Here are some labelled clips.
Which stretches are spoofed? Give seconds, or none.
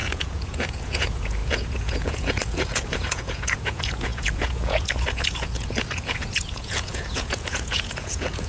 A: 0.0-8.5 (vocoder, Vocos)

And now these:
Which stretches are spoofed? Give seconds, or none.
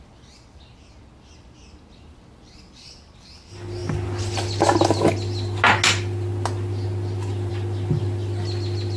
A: none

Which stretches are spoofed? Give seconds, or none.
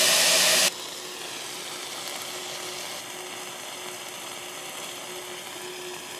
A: none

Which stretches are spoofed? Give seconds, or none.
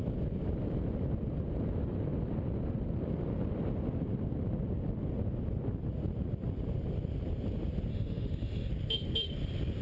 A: 7.9-8.7 (autoencoder, DAC-VAE)